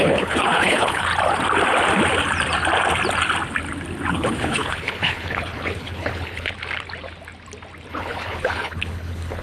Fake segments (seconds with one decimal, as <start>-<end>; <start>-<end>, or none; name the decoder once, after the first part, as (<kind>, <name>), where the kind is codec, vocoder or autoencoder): 0.0-1.1 (codec, HILCodec); 4.1-6.5; 7.9-9.4